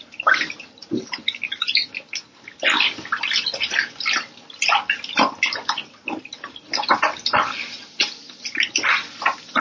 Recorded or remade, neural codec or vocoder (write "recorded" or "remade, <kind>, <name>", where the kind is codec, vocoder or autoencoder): recorded